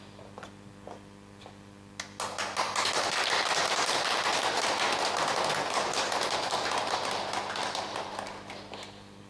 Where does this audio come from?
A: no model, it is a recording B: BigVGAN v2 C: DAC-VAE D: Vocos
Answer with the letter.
A